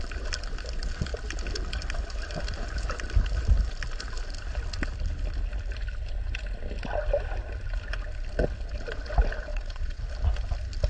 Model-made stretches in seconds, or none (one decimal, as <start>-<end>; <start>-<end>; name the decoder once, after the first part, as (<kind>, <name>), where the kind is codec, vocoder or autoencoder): 9.5-10.0 (vocoder, Vocos)